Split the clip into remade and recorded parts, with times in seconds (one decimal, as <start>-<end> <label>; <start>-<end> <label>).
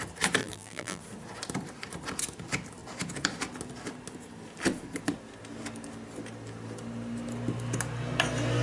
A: 0.0-0.4 recorded; 0.4-1.0 remade; 1.0-8.6 recorded